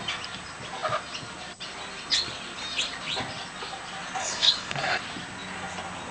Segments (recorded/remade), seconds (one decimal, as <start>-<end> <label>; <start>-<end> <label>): 0.0-4.2 recorded; 4.2-5.0 remade; 5.0-6.1 recorded